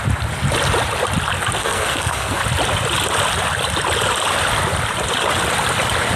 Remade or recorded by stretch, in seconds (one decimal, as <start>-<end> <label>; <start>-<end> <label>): 0.0-1.6 recorded; 1.6-2.4 remade; 2.4-6.2 recorded